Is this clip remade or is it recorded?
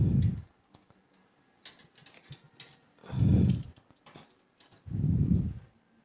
recorded